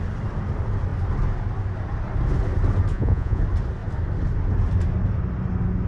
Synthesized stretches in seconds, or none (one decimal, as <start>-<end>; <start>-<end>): 2.9-3.4